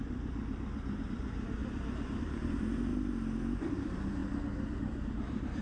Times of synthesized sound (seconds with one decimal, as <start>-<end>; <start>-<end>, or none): 0.0-2.9; 3.6-4.2; 4.8-5.6